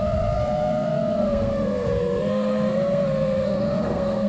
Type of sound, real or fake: fake